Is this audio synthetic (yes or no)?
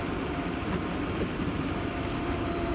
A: yes